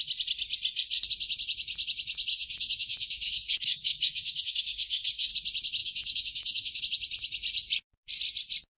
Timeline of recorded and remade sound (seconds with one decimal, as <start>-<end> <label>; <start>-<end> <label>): 0.0-2.3 recorded; 2.3-5.3 remade; 5.3-5.8 recorded; 5.8-6.8 remade; 6.8-8.8 recorded